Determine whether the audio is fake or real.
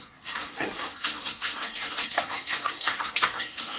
fake